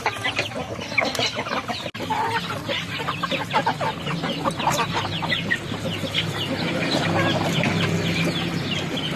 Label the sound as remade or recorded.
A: recorded